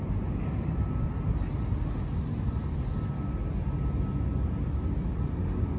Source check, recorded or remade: recorded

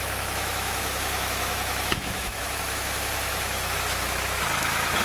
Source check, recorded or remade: remade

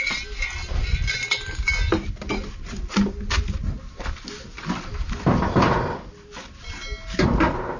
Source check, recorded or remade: recorded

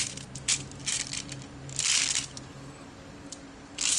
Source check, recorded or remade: recorded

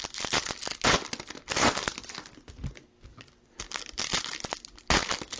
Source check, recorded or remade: recorded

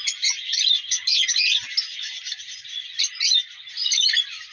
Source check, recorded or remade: recorded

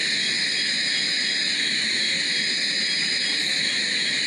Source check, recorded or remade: recorded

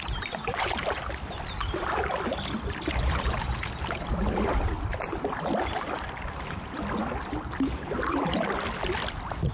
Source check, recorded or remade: recorded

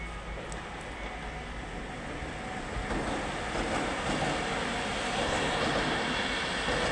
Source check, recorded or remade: recorded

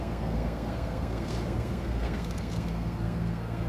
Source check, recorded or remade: remade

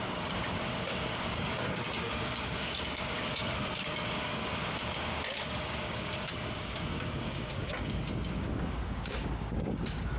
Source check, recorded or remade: remade